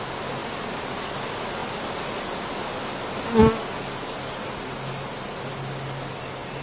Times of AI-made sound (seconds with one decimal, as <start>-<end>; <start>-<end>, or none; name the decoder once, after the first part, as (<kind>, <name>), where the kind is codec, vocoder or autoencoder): none